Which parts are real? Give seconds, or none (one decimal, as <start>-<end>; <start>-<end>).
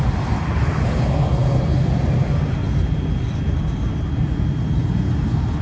0.0-5.6